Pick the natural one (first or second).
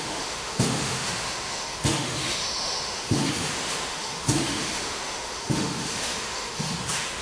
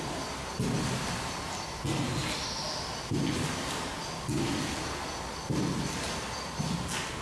second